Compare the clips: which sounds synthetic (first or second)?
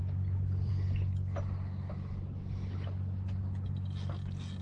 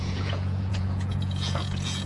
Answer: second